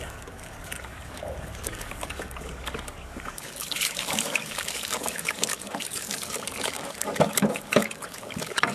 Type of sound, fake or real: fake